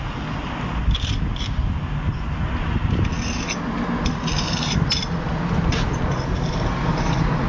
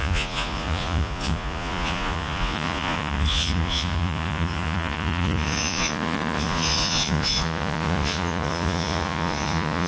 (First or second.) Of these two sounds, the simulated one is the second